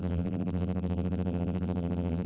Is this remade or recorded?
remade